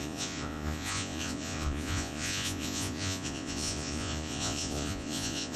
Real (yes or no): no